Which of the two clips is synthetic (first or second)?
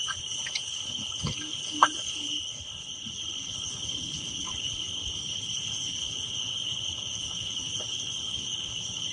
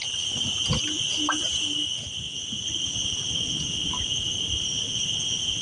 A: first